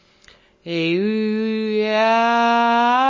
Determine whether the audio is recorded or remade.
recorded